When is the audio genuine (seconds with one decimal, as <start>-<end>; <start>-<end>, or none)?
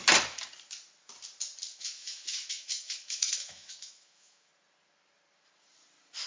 0.0-1.7; 4.5-6.3